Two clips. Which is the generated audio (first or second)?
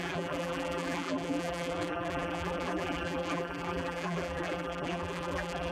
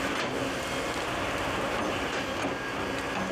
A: first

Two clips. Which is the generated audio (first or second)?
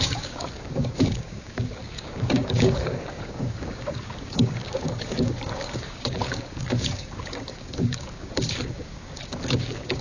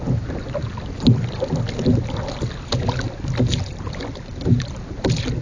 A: first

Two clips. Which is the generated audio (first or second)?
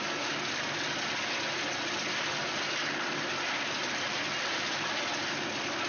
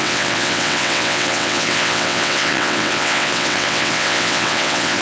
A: second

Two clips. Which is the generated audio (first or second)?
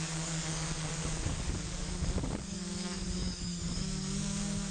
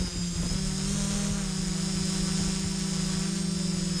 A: first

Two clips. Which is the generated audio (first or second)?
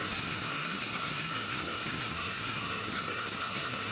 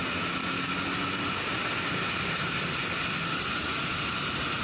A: first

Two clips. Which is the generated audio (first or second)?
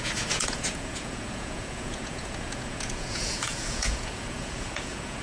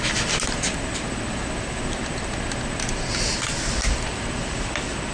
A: first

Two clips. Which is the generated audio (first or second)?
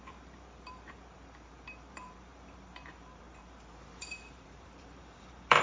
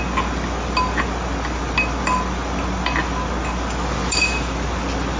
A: first